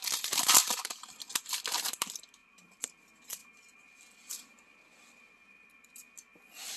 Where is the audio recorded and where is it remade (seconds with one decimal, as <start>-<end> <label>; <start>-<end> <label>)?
0.0-0.6 recorded; 0.6-1.1 remade; 1.1-2.4 recorded; 2.4-2.9 remade; 2.9-6.8 recorded